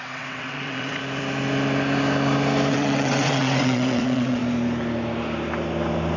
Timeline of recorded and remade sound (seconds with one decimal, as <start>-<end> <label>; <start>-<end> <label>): 0.0-1.0 remade; 1.0-2.7 recorded; 2.7-4.4 remade; 4.4-6.2 recorded